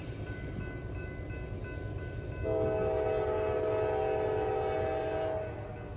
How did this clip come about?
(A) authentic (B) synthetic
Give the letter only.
A